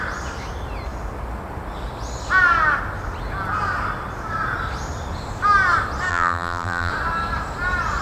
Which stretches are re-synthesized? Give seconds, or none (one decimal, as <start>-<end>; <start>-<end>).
6.1-6.9